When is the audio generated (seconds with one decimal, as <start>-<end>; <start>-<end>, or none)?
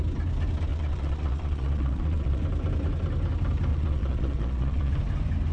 0.7-2.4; 3.7-4.9